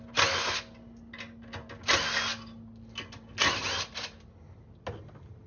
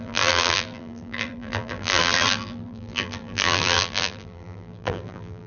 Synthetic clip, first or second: second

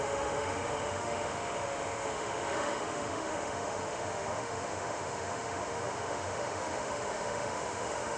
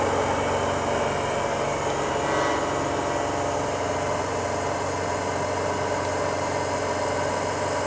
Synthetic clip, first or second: first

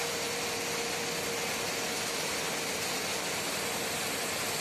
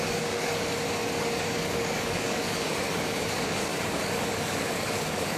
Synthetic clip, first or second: second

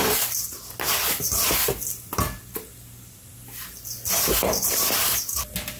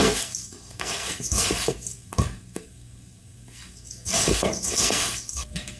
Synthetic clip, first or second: second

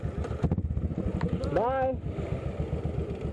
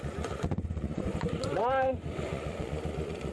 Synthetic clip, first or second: second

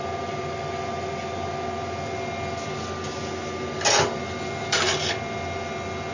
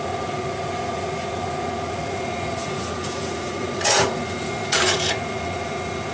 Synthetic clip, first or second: second